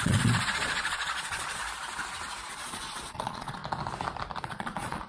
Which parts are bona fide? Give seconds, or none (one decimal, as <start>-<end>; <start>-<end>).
1.6-2.5; 3.6-4.4